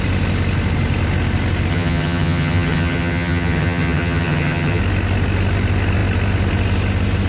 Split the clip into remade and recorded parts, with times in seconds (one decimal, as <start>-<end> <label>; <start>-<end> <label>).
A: 0.0-1.7 recorded; 1.7-4.8 remade; 4.8-7.3 recorded